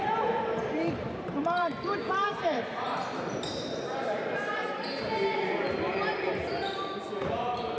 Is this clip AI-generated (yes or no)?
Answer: yes